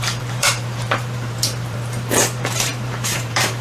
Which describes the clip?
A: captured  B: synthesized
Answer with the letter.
B